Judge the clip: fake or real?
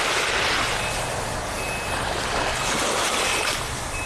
real